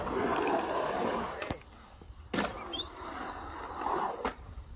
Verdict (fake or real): real